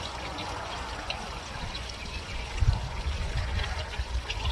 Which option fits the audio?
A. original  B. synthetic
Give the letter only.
B